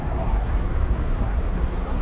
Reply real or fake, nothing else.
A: fake